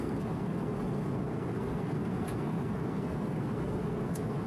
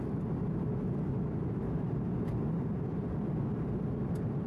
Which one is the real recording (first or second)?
second